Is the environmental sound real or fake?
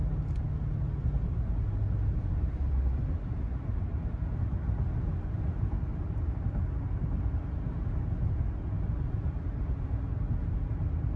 real